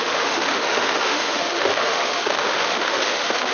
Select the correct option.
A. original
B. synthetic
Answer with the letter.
B